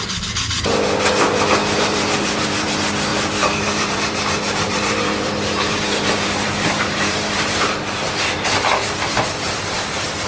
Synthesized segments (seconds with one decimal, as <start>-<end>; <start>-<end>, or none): 1.6-2.7; 3.1-8.1